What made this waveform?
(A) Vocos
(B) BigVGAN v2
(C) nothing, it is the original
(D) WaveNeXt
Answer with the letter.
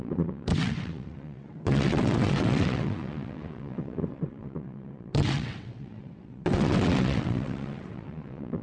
D